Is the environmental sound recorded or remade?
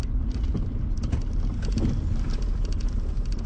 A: recorded